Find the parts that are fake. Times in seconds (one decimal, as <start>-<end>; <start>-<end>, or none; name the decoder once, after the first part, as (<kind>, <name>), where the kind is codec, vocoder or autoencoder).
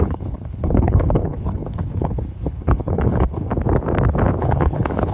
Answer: 0.0-3.5 (codec, HILCodec); 4.4-5.1